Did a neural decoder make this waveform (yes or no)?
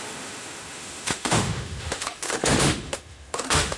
yes